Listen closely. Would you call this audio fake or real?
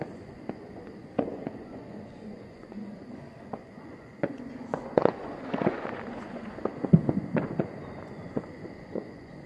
fake